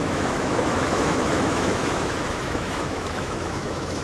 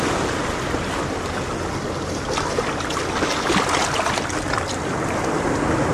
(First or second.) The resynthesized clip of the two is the first